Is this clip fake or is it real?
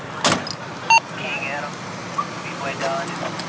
real